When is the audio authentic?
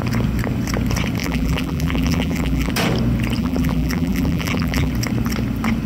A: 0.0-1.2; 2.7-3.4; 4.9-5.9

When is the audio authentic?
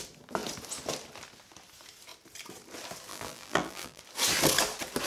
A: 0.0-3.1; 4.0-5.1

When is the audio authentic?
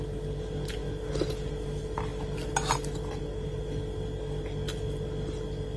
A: 0.0-5.8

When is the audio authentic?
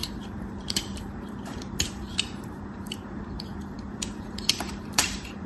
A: none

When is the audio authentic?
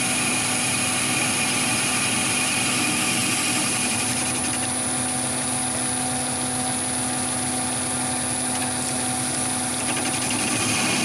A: 0.0-11.0